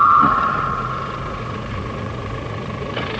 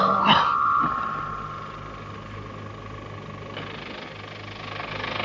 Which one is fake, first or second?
first